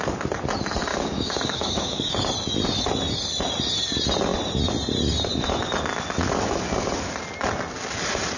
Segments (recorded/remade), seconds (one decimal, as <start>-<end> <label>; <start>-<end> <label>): 0.0-0.9 recorded; 0.9-2.1 remade; 2.1-8.4 recorded